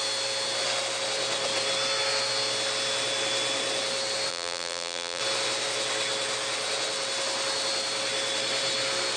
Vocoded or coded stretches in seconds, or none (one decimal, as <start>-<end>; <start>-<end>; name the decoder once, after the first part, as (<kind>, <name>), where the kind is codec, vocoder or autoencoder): 4.3-5.2 (vocoder, BigVGAN v2)